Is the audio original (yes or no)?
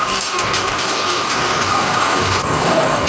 no